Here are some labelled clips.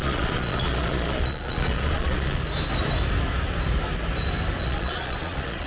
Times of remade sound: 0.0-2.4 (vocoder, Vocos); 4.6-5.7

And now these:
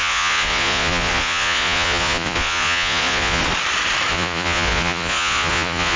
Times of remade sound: 0.0-3.4 (vocoder, Vocos); 4.1-6.0

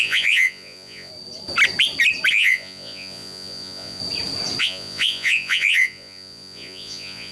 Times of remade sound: 0.0-1.1 (vocoder, Vocos); 2.3-4.0; 4.6-7.3

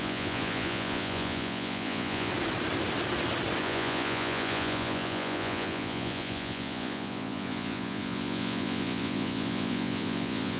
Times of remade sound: 0.0-2.3 (vocoder, Vocos); 3.6-10.6

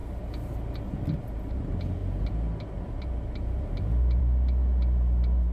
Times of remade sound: none